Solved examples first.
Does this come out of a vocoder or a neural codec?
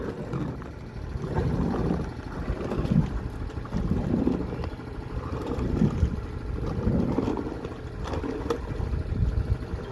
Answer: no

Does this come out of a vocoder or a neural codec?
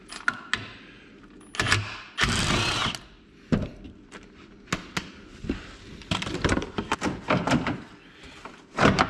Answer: no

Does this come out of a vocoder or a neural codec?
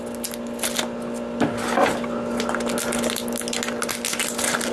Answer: no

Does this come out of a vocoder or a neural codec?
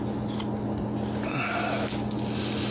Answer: no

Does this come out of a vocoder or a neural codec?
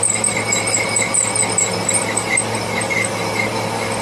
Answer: no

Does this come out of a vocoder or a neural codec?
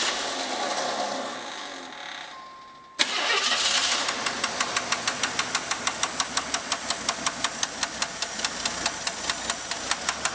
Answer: no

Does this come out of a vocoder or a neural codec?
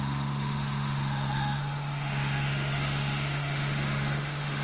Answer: yes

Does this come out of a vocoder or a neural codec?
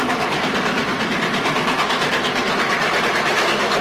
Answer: no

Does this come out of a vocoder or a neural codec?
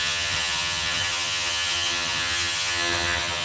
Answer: yes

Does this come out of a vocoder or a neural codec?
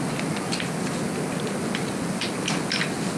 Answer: no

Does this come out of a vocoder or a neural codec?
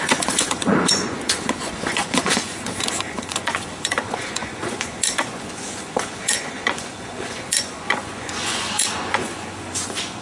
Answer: yes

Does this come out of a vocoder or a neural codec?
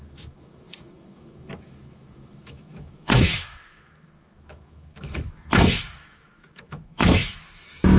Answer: yes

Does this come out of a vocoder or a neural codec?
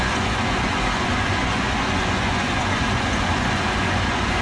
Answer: yes